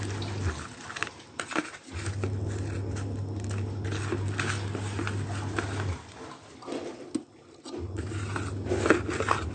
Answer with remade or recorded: recorded